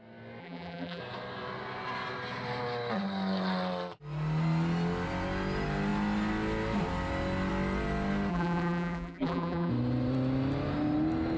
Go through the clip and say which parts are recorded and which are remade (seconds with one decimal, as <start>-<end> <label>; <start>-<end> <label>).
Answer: 0.0-0.4 recorded; 0.4-1.0 remade; 1.0-8.3 recorded; 8.3-9.7 remade; 9.7-11.4 recorded